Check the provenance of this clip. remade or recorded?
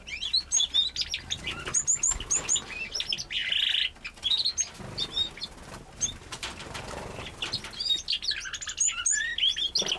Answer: recorded